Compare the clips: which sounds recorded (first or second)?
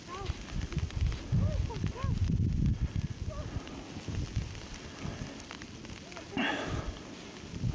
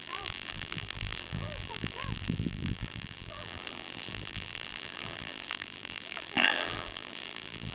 first